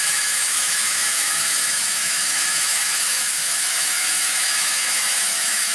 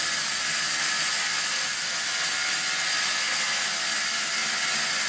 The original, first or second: second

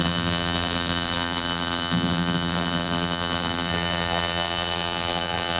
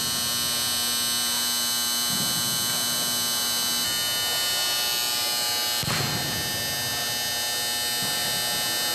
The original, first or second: second